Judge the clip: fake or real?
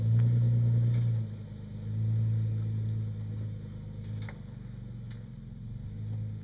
real